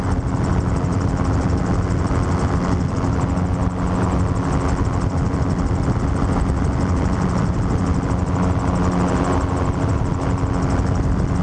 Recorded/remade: recorded